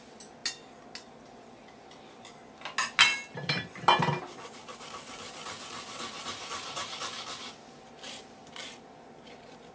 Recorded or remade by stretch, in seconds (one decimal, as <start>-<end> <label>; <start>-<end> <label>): 0.0-9.7 recorded